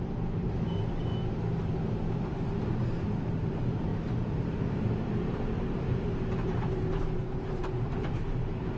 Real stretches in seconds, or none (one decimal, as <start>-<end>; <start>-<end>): 1.1-1.9

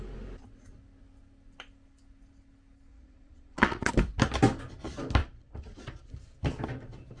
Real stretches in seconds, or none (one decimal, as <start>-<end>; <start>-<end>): 0.0-2.9; 3.9-5.2; 6.1-7.2

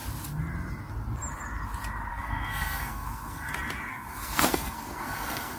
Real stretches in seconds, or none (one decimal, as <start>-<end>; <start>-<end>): 0.0-2.1; 3.5-3.9